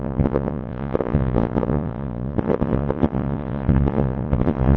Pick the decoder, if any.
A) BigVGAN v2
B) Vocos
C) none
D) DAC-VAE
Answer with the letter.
B